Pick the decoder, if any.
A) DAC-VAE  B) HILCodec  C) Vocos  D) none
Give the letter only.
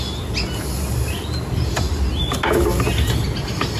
D